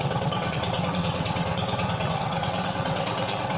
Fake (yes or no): yes